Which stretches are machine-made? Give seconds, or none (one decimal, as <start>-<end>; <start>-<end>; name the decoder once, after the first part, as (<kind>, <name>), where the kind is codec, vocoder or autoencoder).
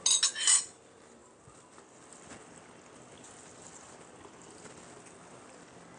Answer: none